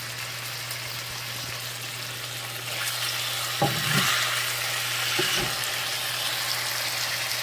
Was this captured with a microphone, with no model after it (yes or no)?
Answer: yes